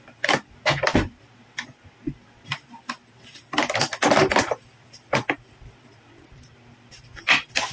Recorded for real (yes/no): yes